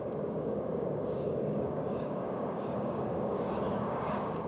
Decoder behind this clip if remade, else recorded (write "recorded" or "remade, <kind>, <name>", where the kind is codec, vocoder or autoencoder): remade, codec, DAC